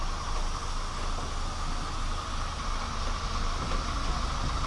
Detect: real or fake real